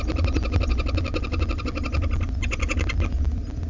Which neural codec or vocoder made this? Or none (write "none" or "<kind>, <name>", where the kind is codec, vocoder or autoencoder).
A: none